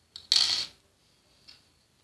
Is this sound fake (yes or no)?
no